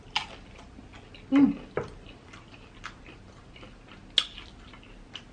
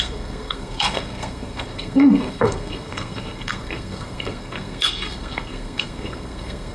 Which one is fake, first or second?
second